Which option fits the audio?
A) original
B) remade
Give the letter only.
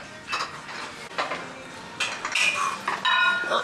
A